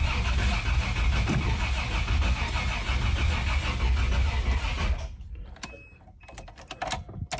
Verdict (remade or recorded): recorded